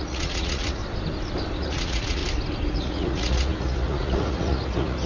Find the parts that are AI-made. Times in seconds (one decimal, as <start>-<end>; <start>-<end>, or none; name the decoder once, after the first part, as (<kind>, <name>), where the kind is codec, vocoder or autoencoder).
0.0-0.8 (vocoder, Vocos); 1.6-2.2; 2.8-5.1